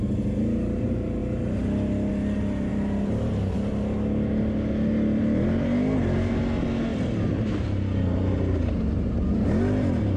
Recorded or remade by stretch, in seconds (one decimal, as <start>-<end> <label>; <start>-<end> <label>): 0.0-2.7 recorded; 2.7-3.5 remade; 3.5-6.9 recorded; 6.9-9.1 remade; 9.1-10.2 recorded